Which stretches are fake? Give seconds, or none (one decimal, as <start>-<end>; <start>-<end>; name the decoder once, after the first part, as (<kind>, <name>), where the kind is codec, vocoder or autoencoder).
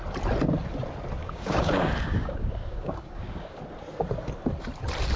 1.2-3.6 (codec, DAC)